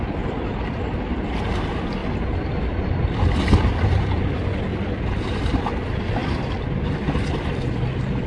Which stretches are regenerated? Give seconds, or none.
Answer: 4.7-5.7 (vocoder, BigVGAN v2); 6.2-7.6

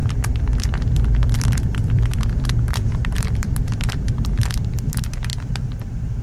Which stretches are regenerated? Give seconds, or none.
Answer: 0.0-6.2 (vocoder, BigVGAN v2)

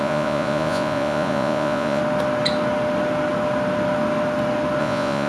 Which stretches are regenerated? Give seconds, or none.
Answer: 0.0-2.0 (vocoder, Vocos); 4.8-5.3

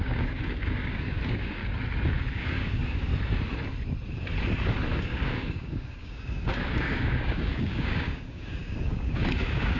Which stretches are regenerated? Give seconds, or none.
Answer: 0.0-1.6 (codec, DAC); 2.3-3.1; 5.0-9.8

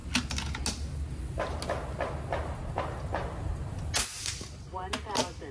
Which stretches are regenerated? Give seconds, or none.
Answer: none